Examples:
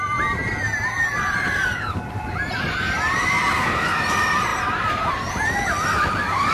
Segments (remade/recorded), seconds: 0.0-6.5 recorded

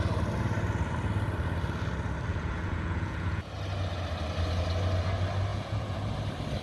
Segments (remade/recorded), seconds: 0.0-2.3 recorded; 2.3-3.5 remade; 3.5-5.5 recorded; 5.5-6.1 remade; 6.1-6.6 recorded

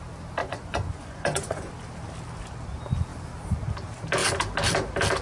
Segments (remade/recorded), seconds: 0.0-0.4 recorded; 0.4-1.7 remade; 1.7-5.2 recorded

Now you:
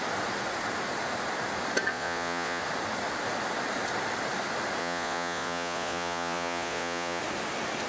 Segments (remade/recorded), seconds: 0.0-1.9 recorded; 1.9-2.6 remade; 2.6-4.8 recorded; 4.8-7.2 remade; 7.2-7.9 recorded

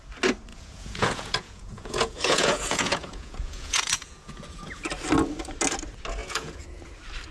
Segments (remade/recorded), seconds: 0.0-0.5 recorded; 0.5-4.9 remade; 4.9-6.2 recorded; 6.2-6.8 remade; 6.8-7.3 recorded

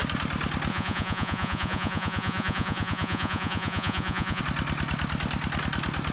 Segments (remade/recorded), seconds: 0.0-0.7 recorded; 0.7-4.4 remade; 4.4-6.1 recorded

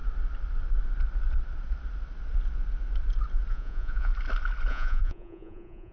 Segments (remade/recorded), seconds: 0.0-3.5 recorded; 3.5-4.1 remade; 4.1-4.7 recorded; 4.7-5.9 remade